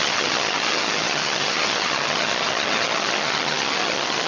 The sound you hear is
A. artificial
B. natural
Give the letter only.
A